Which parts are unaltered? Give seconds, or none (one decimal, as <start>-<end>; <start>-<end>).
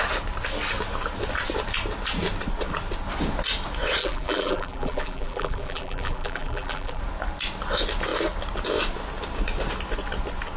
0.0-4.0; 7.0-10.6